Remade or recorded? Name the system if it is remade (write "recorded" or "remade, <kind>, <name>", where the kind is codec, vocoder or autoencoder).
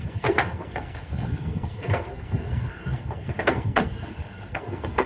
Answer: remade, codec, SNAC